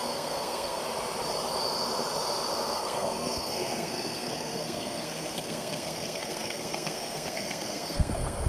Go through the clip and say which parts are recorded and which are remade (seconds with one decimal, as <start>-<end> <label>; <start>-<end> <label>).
0.0-0.8 remade; 0.8-2.5 recorded; 2.5-8.5 remade